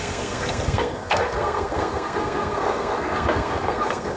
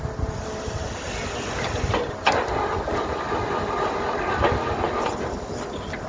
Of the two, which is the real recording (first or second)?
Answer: second